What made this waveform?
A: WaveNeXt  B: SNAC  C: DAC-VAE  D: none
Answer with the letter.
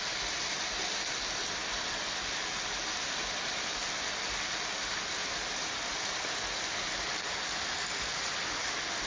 D